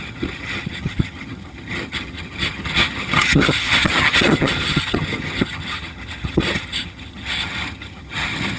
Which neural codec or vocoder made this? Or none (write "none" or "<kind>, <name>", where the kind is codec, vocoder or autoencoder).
vocoder, HiFi-GAN